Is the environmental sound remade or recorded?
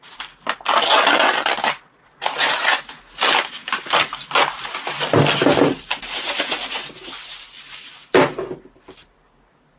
recorded